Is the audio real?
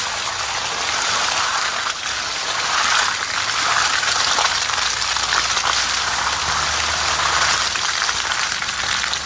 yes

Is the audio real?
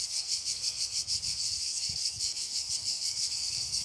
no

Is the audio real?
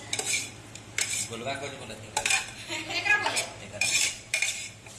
no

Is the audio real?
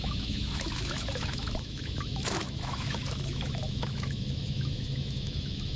no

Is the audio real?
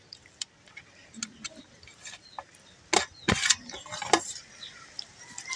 yes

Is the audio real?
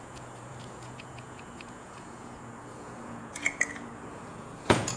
no